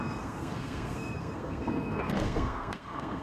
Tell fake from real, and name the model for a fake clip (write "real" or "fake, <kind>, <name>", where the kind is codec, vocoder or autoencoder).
fake, codec, SNAC